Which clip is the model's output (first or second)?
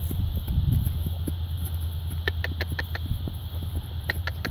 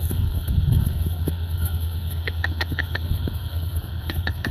second